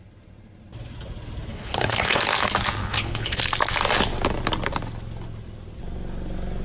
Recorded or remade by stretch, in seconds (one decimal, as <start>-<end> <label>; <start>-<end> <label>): 0.0-1.5 recorded; 1.5-2.2 remade; 2.2-2.8 recorded; 2.8-3.4 remade; 3.4-6.6 recorded